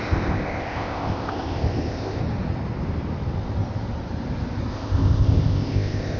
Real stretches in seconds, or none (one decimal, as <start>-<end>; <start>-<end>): 2.2-4.7